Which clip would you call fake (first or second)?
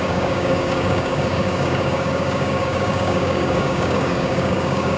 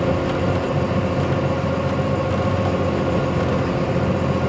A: first